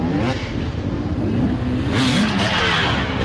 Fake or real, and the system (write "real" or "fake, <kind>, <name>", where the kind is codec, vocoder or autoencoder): real